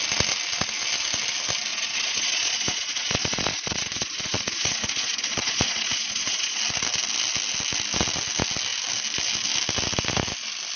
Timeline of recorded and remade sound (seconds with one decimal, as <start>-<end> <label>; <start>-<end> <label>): 0.0-1.7 recorded; 1.7-6.6 remade; 6.6-10.8 recorded

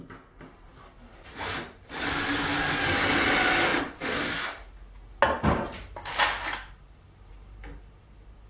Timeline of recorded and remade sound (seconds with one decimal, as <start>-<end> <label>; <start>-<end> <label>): 0.0-8.5 recorded

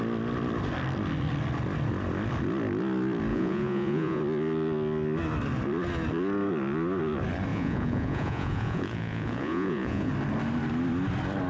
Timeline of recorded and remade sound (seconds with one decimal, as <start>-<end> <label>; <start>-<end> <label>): 0.0-3.3 recorded; 3.3-4.2 remade; 4.2-7.5 recorded; 7.5-10.1 remade; 10.1-11.5 recorded

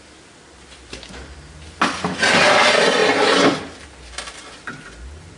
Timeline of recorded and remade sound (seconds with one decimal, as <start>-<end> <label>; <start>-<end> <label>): 0.0-5.4 recorded

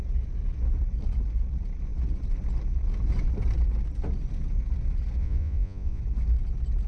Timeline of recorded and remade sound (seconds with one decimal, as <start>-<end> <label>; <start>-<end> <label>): 0.0-5.2 recorded; 5.2-6.0 remade; 6.0-6.9 recorded